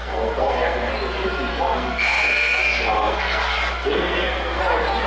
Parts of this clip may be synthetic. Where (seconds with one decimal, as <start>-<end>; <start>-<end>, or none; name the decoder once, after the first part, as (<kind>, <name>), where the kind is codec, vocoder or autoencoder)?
0.0-0.9 (codec, SNAC); 1.5-4.6